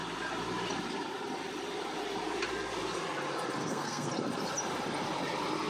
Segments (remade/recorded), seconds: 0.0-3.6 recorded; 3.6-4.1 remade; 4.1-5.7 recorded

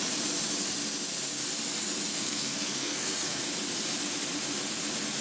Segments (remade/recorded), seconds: 0.0-2.1 recorded; 2.1-3.4 remade; 3.4-5.2 recorded

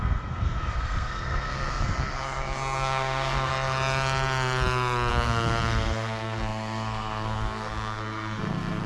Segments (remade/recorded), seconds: 0.0-3.5 remade; 3.5-5.1 recorded; 5.1-8.9 remade

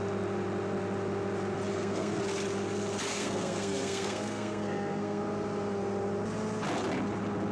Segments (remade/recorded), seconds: 0.0-1.7 recorded; 1.7-2.2 remade; 2.2-3.1 recorded; 3.1-5.2 remade; 5.2-7.5 recorded

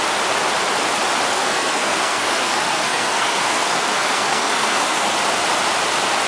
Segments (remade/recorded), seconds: 0.0-1.3 recorded; 1.3-5.1 remade; 5.1-6.3 recorded

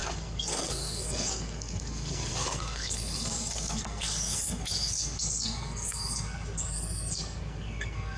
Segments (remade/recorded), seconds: 0.0-8.2 remade